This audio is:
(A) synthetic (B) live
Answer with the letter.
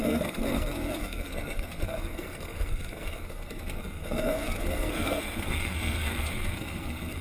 A